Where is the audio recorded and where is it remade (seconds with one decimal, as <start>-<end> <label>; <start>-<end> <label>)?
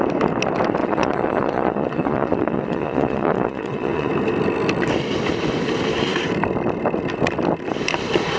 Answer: 0.0-0.8 recorded; 0.8-4.1 remade; 4.1-8.4 recorded